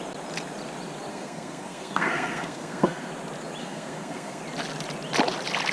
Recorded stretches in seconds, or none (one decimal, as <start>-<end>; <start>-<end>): 0.0-1.1; 3.1-3.6; 4.4-5.7